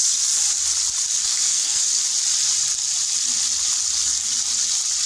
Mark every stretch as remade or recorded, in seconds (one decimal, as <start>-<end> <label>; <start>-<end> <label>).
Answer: 0.0-1.3 recorded; 1.3-1.8 remade; 1.8-5.1 recorded